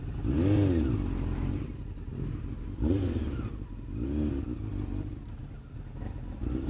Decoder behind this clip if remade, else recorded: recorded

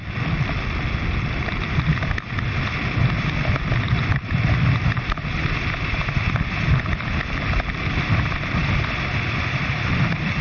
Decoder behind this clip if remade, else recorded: recorded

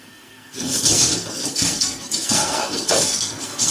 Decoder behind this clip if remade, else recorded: remade, codec, SNAC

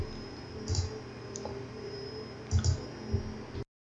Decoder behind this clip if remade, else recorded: recorded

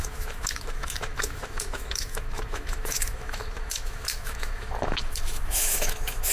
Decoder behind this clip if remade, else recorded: remade, autoencoder, DAC-VAE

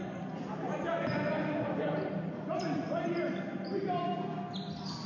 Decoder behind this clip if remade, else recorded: recorded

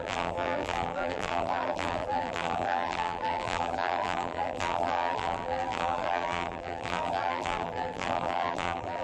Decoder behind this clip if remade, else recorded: remade, vocoder, BigVGAN v2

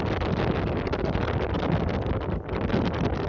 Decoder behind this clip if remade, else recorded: recorded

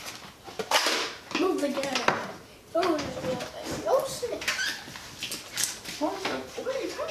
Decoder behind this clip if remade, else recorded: recorded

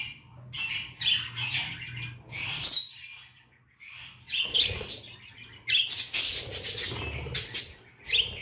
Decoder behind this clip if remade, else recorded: recorded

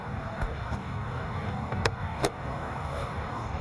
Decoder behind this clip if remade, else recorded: remade, codec, DAC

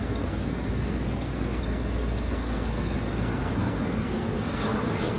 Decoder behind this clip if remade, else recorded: remade, codec, SNAC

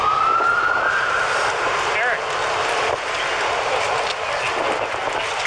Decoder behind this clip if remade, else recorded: recorded